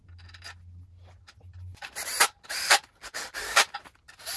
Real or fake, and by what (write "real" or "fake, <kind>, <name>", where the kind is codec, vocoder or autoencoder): real